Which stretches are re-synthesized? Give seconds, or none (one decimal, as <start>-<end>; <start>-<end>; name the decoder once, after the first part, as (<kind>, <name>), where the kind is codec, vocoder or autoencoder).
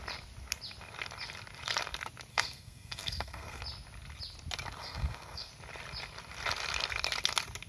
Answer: 2.3-3.6 (codec, SNAC); 4.8-5.5